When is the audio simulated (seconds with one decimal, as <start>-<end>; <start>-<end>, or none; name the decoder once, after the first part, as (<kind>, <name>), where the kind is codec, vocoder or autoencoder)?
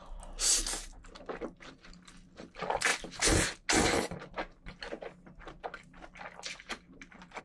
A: 0.8-1.4 (vocoder, BigVGAN v2)